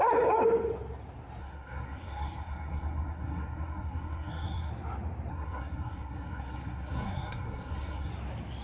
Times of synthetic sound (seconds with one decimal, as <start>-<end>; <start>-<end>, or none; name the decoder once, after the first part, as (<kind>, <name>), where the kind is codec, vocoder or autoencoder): 1.4-4.7 (codec, SNAC); 5.3-8.1